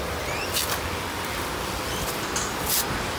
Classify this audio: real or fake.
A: real